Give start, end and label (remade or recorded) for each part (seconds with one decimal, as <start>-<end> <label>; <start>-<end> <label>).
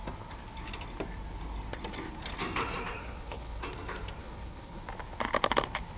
0.0-3.0 recorded; 3.0-3.6 remade; 3.6-4.2 recorded; 4.2-4.8 remade; 4.8-6.0 recorded